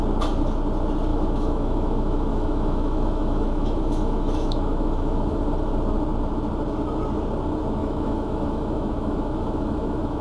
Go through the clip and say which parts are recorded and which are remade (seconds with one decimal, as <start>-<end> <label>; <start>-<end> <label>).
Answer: 0.0-1.1 recorded; 1.1-5.4 remade; 5.4-7.8 recorded; 7.8-10.2 remade